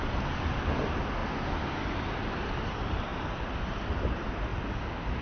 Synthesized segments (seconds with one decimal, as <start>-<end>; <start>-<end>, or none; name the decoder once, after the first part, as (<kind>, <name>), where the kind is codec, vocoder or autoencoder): 0.0-1.2 (vocoder, BigVGAN v2); 2.5-4.5

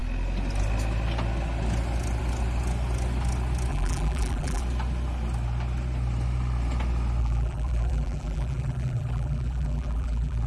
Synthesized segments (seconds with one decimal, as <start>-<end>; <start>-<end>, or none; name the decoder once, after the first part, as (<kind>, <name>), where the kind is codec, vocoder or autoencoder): 3.7-4.6 (vocoder, BigVGAN v2); 7.2-10.5

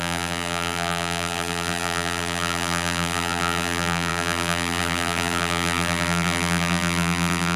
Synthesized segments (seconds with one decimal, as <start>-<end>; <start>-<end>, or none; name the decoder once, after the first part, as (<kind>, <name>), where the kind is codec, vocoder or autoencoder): 0.0-7.6 (vocoder, BigVGAN v2)